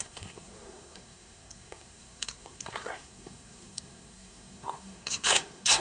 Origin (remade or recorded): remade